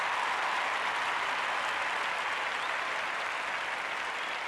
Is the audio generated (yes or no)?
no